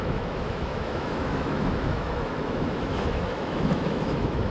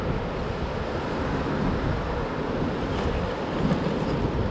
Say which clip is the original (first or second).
second